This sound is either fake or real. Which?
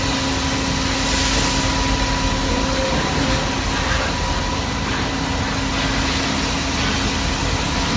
real